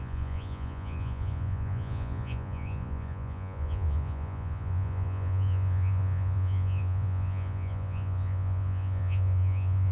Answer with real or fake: fake